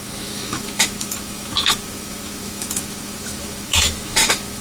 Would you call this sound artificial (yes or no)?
yes